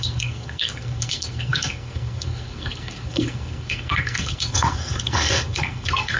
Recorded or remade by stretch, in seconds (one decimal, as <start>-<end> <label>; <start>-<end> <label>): 0.0-6.2 remade